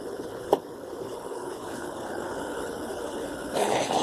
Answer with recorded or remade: remade